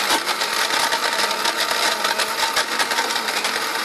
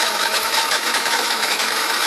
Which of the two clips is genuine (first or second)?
first